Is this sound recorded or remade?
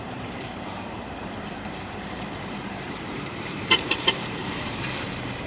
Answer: remade